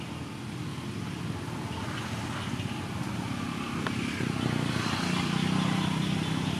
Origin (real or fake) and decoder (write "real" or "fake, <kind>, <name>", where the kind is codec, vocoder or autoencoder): real